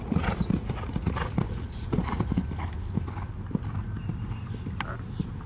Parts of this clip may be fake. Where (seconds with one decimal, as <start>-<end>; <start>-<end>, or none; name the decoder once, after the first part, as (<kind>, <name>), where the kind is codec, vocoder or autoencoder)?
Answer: 0.0-2.4 (vocoder, Vocos)